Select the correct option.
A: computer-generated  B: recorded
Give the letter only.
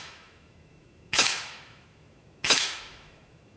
A